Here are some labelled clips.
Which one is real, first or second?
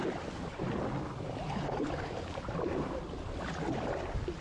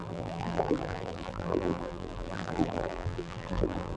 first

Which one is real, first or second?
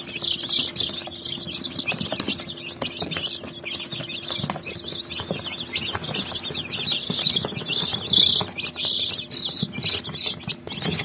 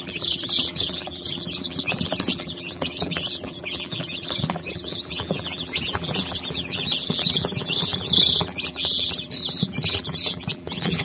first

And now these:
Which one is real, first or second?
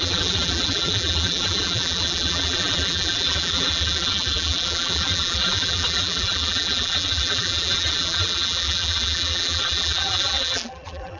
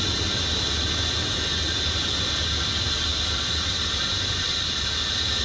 second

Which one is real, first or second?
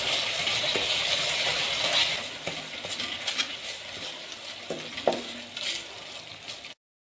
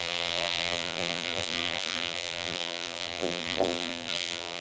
first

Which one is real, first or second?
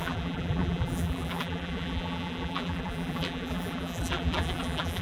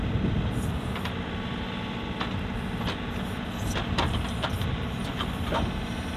second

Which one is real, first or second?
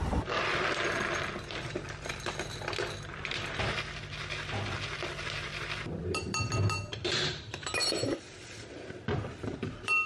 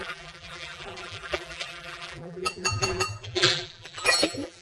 first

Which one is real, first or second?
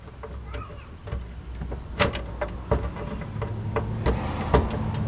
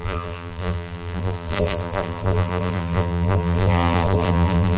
first